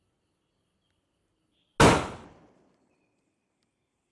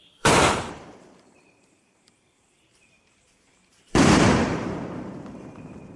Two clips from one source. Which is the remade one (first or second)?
second